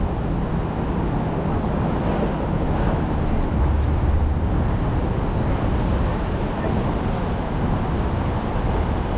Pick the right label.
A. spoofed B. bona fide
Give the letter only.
B